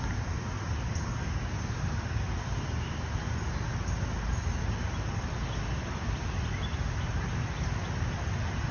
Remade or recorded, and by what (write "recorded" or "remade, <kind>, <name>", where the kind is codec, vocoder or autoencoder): recorded